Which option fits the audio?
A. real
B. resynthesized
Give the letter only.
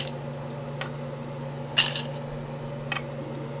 A